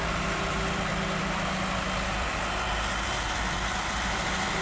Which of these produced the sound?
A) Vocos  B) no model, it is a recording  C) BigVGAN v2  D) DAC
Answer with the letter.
C